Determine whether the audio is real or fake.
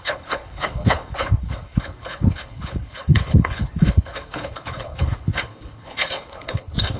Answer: fake